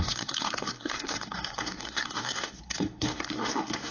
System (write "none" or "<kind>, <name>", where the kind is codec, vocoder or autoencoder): codec, SNAC